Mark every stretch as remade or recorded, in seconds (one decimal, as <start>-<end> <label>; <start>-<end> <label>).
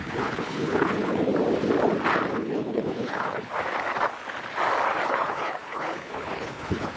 0.0-1.3 remade; 1.3-2.3 recorded; 2.3-3.5 remade; 3.5-5.1 recorded; 5.1-7.0 remade